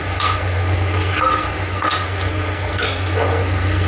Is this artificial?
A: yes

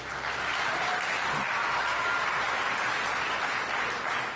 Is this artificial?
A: no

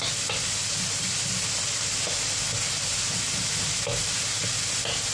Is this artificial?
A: no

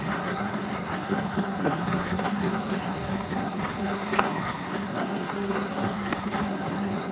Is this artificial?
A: yes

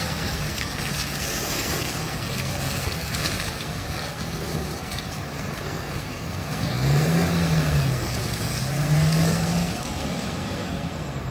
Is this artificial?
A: yes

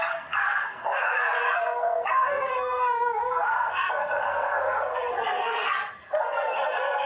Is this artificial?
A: yes